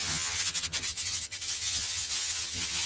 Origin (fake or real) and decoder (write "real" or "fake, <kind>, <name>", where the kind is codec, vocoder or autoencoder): fake, vocoder, HiFi-GAN